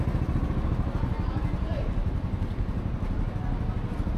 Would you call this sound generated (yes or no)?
no